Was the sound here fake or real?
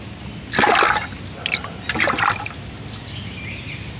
real